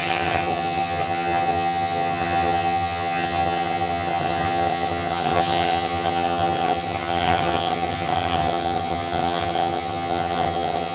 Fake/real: fake